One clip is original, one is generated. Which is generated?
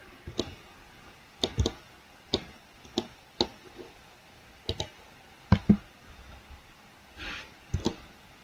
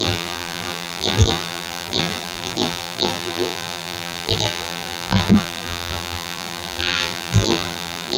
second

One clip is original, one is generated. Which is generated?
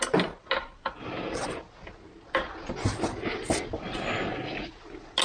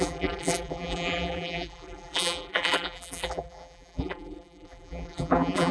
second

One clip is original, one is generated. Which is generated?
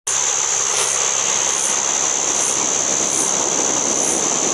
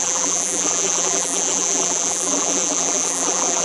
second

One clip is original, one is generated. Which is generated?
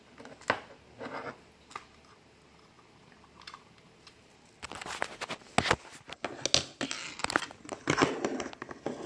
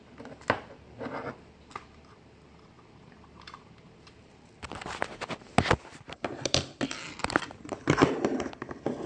second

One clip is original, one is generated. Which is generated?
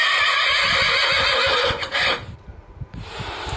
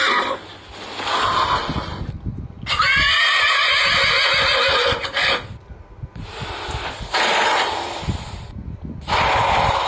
first